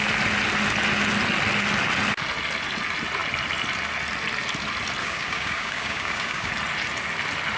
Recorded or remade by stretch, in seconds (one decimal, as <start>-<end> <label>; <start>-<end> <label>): 0.0-5.0 recorded; 5.0-6.5 remade; 6.5-7.6 recorded